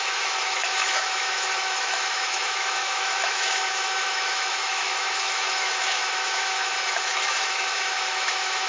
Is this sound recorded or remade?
remade